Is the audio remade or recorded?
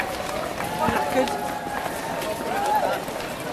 recorded